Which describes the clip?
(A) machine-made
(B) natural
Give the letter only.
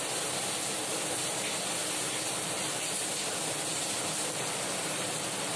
B